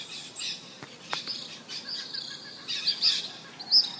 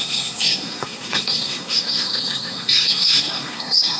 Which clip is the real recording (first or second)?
first